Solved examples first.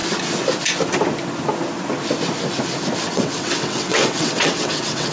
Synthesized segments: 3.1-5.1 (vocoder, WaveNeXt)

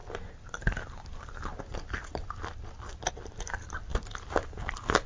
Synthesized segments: none

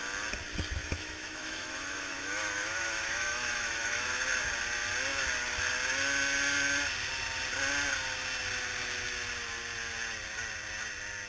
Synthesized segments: 0.8-4.2 (autoencoder, DAC-VAE)

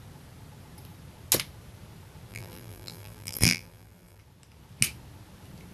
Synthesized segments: 2.3-4.2 (vocoder, BigVGAN v2)

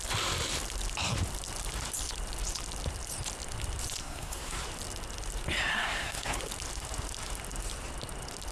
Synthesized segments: 4.0-4.6 (codec, SNAC); 5.7-6.4

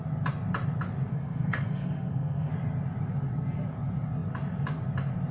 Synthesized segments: 1.1-2.5 (codec, SNAC)

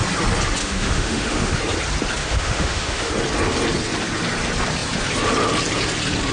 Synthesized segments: 0.6-1.6 (autoencoder, DAC-VAE); 2.2-3.1